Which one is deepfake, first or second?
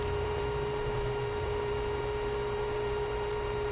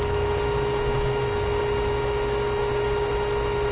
first